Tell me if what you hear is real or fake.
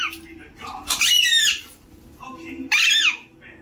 real